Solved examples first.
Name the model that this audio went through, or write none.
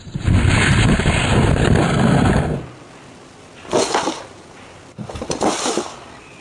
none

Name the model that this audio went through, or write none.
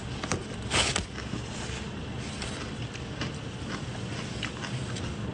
none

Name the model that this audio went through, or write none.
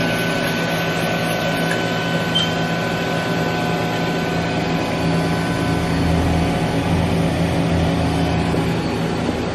none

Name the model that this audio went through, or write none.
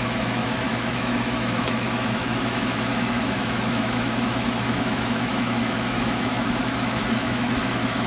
autoencoder, DAC-VAE